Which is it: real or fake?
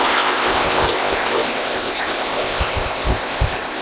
fake